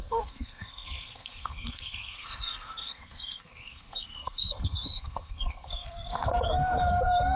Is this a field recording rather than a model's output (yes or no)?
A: no